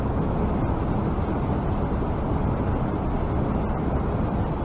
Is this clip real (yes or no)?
yes